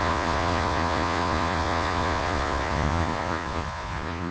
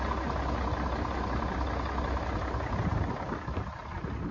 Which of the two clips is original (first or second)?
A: second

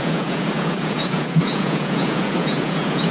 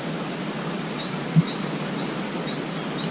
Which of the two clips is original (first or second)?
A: second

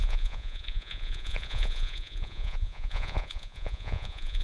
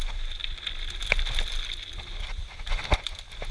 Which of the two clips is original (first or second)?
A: second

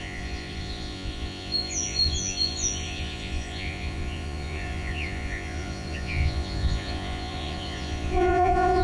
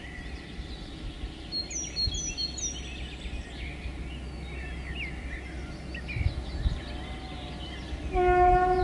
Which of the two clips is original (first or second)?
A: second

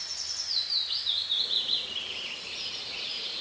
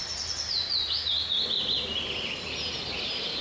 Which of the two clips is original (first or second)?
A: second